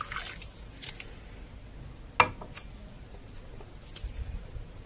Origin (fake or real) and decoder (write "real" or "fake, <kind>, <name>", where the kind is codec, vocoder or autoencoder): real